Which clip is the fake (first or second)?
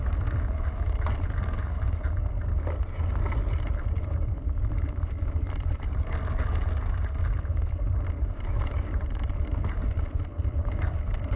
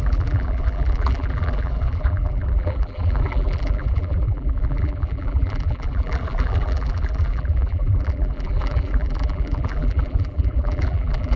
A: second